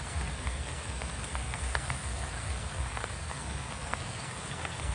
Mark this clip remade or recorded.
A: remade